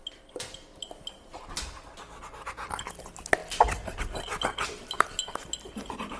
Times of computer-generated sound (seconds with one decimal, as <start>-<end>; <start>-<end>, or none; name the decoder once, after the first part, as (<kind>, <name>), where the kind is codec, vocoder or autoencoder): none